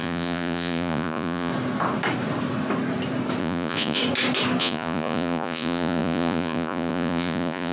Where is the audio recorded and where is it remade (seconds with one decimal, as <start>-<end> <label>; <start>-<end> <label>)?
0.0-1.5 remade; 1.5-3.4 recorded; 3.4-4.0 remade; 4.0-4.6 recorded; 4.6-7.7 remade